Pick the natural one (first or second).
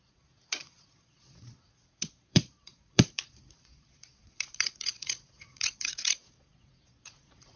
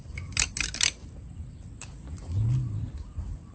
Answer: second